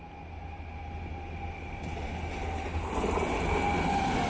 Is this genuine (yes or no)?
yes